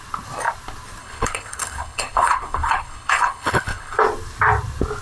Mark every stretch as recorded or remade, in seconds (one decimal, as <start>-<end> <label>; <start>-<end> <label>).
0.0-1.0 recorded; 1.0-4.0 remade; 4.0-5.0 recorded